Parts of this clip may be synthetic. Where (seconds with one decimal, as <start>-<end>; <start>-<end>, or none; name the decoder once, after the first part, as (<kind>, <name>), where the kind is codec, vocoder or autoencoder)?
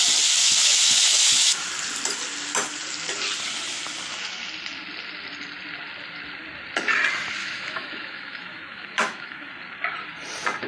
0.4-1.7 (autoencoder, DAC-VAE); 7.4-9.5